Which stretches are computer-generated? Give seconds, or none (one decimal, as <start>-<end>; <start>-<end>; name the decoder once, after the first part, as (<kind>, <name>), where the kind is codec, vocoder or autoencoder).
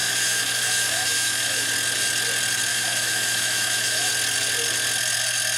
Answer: 0.0-1.7 (autoencoder, DAC-VAE); 2.7-4.1